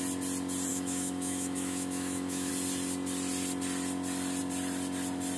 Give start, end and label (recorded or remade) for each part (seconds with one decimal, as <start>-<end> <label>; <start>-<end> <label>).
0.0-0.7 recorded; 0.7-2.5 remade; 2.5-5.4 recorded